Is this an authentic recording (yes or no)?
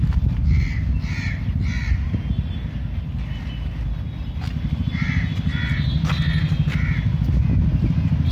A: yes